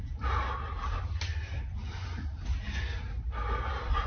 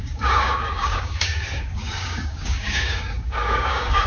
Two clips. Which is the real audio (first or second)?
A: first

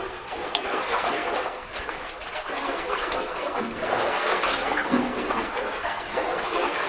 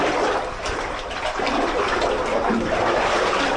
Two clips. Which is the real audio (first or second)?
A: second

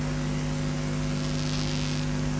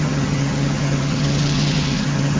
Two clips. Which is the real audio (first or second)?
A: first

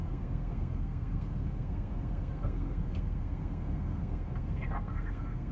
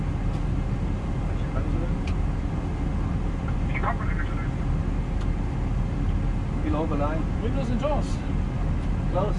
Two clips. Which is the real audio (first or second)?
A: second